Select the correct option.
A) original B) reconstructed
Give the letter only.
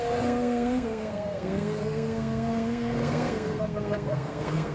B